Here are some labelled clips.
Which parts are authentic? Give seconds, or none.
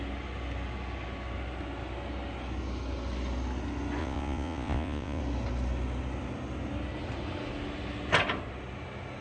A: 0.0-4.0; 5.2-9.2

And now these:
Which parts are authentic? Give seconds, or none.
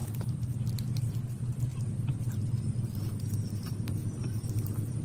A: 0.0-5.0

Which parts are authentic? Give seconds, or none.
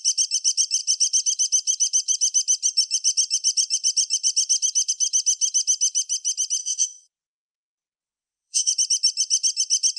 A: 0.0-6.6; 7.2-8.0; 8.7-10.0